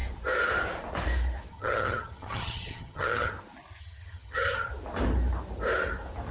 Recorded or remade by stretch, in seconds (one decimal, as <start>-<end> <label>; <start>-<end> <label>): 0.0-1.5 recorded; 1.5-3.3 remade; 3.3-3.8 recorded; 3.8-4.7 remade; 4.7-6.3 recorded